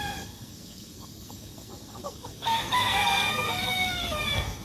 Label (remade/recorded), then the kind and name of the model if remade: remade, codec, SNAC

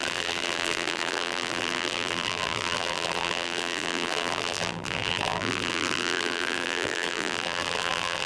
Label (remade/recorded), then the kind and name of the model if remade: remade, vocoder, BigVGAN v2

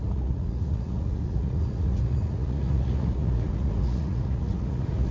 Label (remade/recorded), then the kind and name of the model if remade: remade, vocoder, Vocos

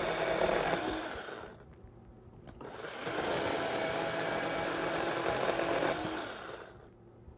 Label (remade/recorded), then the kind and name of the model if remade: recorded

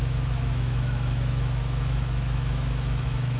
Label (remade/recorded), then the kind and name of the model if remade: remade, autoencoder, DAC-VAE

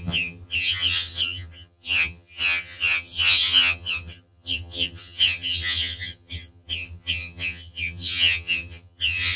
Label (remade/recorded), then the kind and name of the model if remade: remade, vocoder, HiFi-GAN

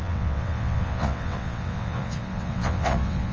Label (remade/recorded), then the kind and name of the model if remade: remade, vocoder, WaveNeXt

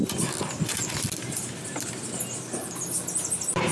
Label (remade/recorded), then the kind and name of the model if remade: recorded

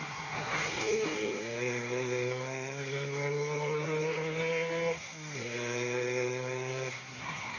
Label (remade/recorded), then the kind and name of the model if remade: remade, codec, SNAC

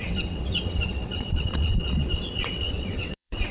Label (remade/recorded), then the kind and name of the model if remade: remade, vocoder, WaveNeXt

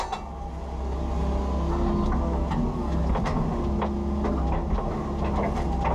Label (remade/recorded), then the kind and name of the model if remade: recorded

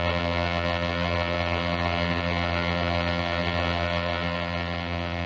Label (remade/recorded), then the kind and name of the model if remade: remade, vocoder, BigVGAN v2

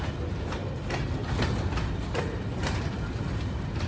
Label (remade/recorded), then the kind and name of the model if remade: recorded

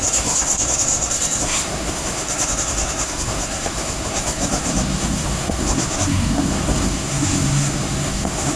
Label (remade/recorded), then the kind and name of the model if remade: remade, codec, SNAC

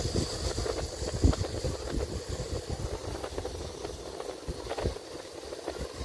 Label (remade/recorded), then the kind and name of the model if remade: recorded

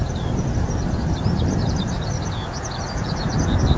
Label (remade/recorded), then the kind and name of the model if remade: recorded